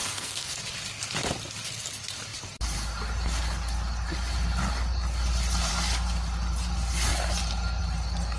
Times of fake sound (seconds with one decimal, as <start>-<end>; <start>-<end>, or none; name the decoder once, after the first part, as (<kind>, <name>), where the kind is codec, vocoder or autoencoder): 0.0-0.6 (codec, SNAC)